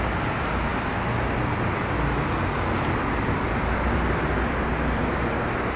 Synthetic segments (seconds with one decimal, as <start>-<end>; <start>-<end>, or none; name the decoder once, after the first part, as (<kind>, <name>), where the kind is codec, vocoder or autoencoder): none